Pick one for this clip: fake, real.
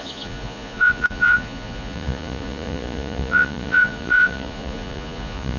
fake